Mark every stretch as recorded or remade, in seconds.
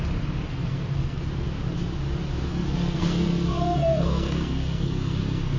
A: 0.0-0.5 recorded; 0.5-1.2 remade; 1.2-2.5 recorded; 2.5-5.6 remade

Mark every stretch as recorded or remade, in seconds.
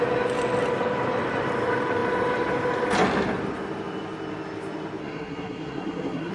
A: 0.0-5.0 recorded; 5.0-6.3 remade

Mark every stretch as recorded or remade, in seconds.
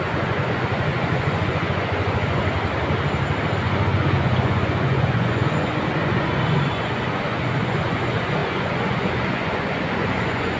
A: 0.0-2.4 remade; 2.4-3.6 recorded; 3.6-10.6 remade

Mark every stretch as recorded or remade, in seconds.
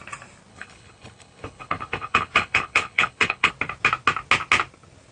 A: 0.0-0.5 recorded; 0.5-3.5 remade; 3.5-5.1 recorded